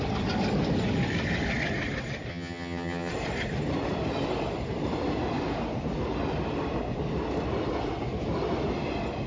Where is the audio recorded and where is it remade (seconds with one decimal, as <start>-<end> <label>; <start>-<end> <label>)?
0.0-2.3 recorded; 2.3-3.1 remade; 3.1-9.3 recorded